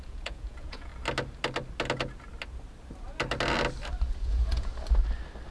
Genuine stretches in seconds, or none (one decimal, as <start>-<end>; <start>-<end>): 0.9-4.2; 4.7-5.5